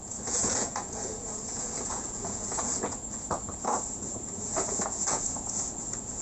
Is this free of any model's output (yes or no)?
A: no